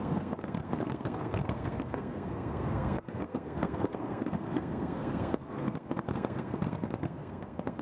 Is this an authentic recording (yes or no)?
no